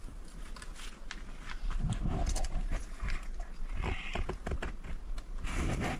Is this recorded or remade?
recorded